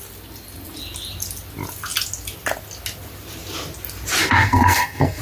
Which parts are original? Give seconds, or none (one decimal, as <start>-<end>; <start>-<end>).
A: 0.0-4.2